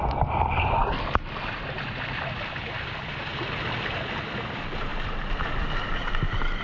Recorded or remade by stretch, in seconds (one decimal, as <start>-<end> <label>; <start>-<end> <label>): 0.0-6.6 recorded